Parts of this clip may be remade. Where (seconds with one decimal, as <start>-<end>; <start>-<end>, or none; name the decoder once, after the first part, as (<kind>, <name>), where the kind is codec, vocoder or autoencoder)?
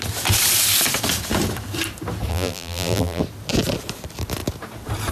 2.3-3.2 (vocoder, BigVGAN v2)